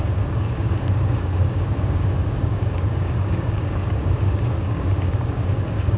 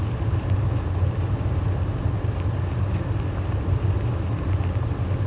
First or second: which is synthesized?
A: first